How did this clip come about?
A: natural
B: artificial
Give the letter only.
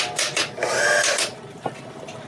A